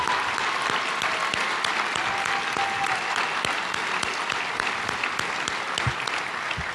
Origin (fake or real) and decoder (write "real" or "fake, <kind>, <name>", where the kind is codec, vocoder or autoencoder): real